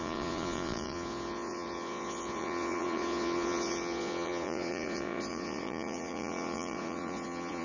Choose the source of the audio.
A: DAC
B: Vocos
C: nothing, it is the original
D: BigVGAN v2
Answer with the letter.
B